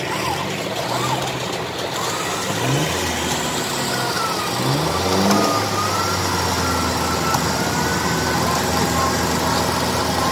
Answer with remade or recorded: recorded